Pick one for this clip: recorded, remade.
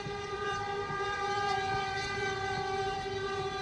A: remade